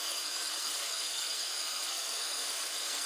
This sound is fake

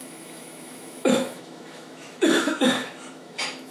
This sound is fake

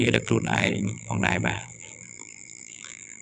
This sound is fake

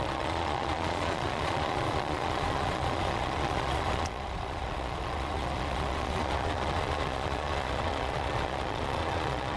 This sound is fake